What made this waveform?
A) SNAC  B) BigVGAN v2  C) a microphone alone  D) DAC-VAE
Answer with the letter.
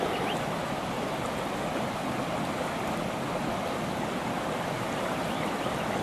C